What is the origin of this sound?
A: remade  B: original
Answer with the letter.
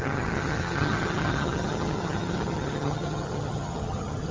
A